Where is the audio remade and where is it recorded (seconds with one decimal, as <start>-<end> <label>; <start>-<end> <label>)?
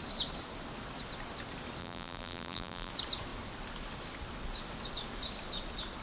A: 0.0-1.8 recorded; 1.8-2.9 remade; 2.9-6.0 recorded